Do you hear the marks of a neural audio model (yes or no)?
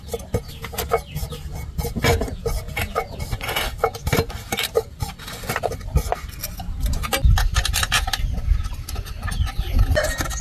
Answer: no